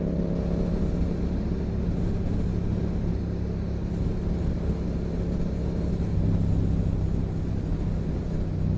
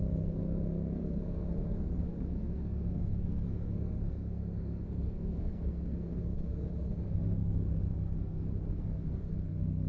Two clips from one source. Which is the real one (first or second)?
first